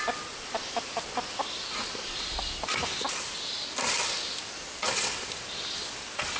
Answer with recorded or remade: recorded